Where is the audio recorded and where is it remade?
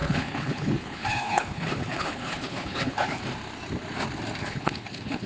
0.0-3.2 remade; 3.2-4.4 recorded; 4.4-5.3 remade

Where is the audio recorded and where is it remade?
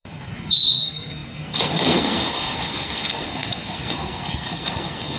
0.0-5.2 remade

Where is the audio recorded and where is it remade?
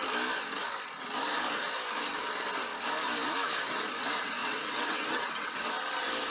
0.0-4.4 recorded; 4.4-5.7 remade; 5.7-6.3 recorded